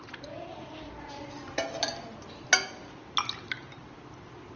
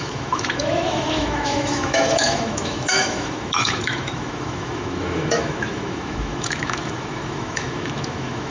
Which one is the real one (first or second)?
first